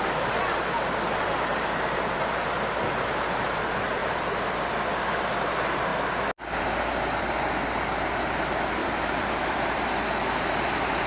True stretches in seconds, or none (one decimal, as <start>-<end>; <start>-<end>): 0.0-4.0; 4.6-8.8; 9.9-11.1